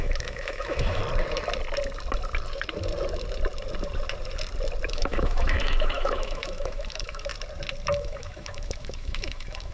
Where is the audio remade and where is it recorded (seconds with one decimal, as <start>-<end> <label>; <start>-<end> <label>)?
0.0-1.0 remade; 1.0-4.9 recorded; 4.9-7.3 remade; 7.3-7.9 recorded; 7.9-9.7 remade